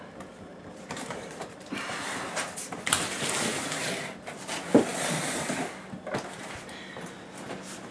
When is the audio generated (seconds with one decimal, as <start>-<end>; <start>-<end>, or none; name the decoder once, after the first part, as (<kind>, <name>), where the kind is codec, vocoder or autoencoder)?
0.5-2.8 (vocoder, BigVGAN v2)